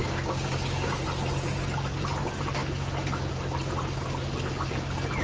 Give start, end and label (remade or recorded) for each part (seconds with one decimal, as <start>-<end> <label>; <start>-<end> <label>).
0.0-1.0 remade; 1.0-5.2 recorded